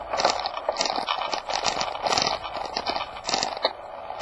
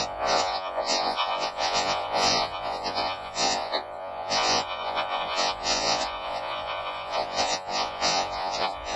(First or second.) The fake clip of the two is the second